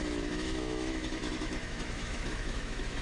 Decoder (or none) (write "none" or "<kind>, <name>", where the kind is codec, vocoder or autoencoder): autoencoder, DAC-VAE